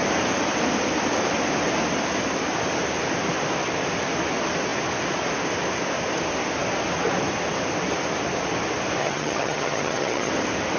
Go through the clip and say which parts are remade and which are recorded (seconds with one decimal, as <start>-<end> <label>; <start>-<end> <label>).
0.0-9.0 recorded; 9.0-10.3 remade; 10.3-10.8 recorded

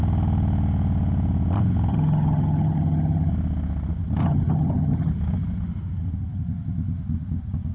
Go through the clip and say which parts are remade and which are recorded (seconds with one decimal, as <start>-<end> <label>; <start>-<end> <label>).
0.0-1.9 recorded; 1.9-3.3 remade; 3.3-4.2 recorded; 4.2-5.1 remade; 5.1-7.7 recorded

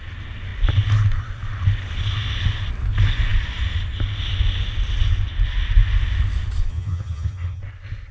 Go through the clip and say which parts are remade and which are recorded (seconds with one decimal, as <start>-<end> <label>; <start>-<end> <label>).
0.0-6.7 recorded; 6.7-7.6 remade; 7.6-8.1 recorded